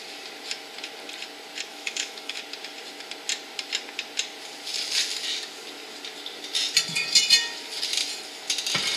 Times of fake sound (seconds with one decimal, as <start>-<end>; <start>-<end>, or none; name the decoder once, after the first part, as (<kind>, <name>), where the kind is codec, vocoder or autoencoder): 1.7-2.4 (autoencoder, DAC-VAE)